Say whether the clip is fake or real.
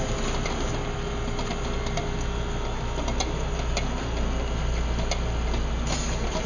real